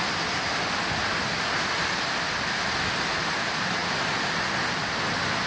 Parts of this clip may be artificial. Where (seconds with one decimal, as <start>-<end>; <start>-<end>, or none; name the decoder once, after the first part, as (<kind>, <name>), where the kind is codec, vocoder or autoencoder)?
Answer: 3.8-4.5 (vocoder, BigVGAN v2)